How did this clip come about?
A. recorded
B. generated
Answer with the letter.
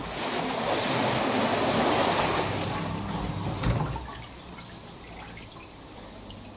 A